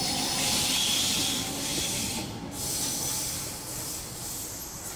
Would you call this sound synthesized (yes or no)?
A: yes